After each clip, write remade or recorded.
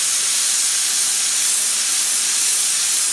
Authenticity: recorded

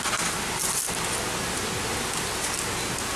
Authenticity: recorded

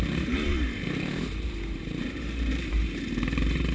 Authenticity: remade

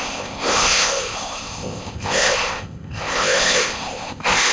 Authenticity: remade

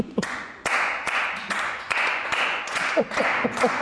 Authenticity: remade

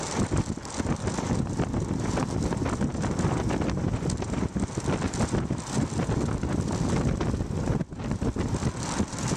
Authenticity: recorded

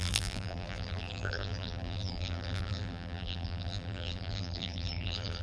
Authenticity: remade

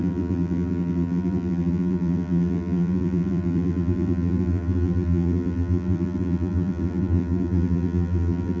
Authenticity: remade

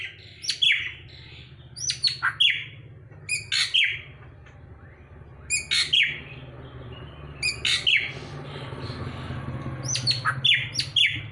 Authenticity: recorded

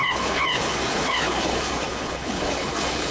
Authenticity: remade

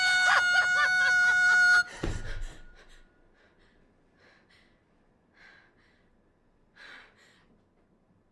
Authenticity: recorded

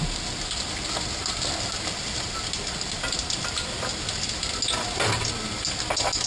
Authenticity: recorded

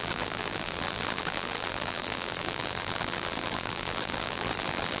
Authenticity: remade